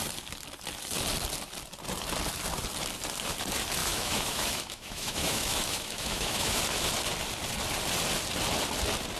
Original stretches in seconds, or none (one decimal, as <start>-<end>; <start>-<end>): 0.0-3.8; 6.6-9.2